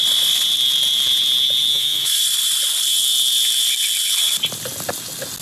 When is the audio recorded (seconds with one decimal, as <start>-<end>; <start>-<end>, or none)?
0.0-1.7; 2.2-5.4